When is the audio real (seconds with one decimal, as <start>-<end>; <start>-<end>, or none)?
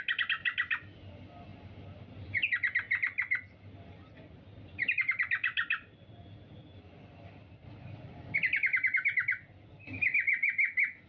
0.0-11.1